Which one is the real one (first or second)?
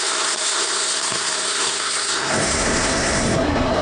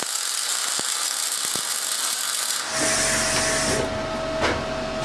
second